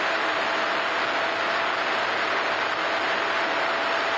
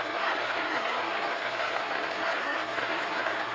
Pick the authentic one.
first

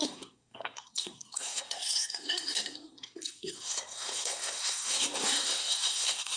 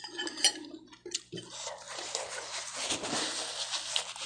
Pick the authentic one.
second